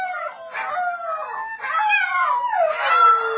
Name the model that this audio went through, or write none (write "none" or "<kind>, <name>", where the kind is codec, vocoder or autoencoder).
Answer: none